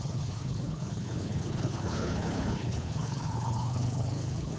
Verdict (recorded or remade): remade